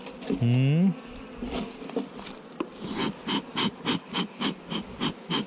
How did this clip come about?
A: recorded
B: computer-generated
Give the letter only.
A